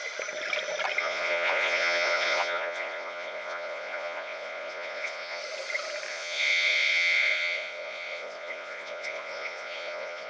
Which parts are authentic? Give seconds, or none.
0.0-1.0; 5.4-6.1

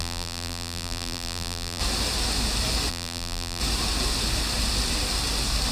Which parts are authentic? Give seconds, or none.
1.8-2.9; 3.6-5.7